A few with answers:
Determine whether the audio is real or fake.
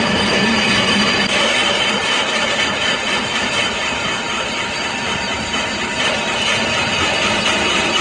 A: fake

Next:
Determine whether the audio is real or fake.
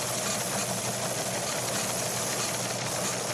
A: real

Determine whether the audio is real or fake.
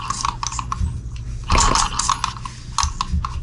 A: real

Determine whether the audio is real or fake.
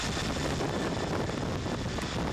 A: real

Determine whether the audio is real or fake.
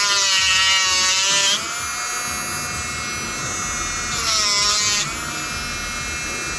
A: real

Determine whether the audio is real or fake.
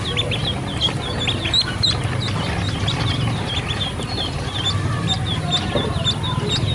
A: real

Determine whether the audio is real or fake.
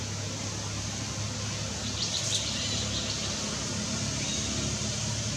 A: real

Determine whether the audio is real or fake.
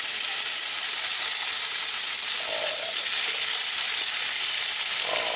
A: fake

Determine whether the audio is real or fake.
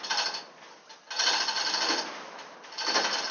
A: real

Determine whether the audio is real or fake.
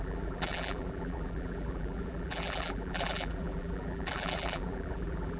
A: fake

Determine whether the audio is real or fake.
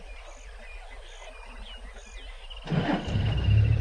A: real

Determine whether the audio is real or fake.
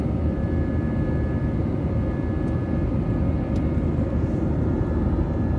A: real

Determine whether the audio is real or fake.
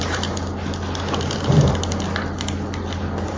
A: real